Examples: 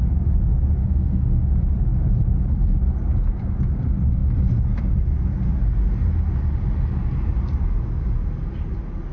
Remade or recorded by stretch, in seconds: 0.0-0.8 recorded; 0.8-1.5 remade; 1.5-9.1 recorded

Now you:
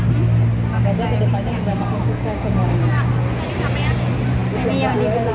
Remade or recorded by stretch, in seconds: 0.0-1.7 recorded; 1.7-2.8 remade; 2.8-5.3 recorded

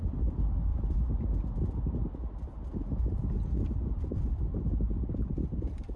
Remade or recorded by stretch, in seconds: 0.0-0.7 remade; 0.7-4.0 recorded; 4.0-6.0 remade